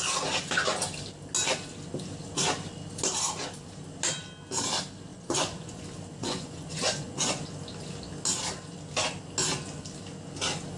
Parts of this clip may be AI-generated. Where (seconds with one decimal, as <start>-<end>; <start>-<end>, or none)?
5.1-5.8; 6.2-7.4